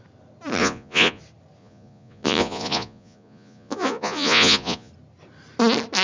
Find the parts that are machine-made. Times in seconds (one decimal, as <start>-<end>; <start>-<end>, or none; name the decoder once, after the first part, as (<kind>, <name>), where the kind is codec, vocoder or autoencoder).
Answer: 0.6-1.2 (vocoder, Vocos); 1.6-4.9